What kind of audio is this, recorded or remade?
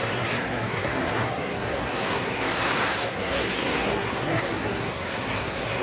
remade